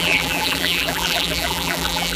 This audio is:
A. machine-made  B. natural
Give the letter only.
A